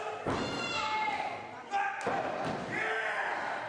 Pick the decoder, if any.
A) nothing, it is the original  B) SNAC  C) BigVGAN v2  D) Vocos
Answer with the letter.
A